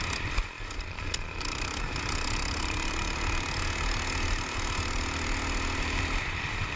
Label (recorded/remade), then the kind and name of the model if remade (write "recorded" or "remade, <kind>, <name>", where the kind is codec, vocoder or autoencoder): recorded